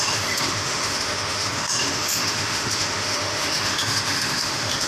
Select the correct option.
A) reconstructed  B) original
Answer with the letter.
A